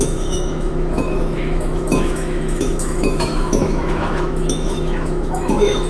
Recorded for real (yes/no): no